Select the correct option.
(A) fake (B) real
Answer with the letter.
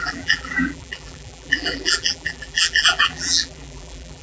A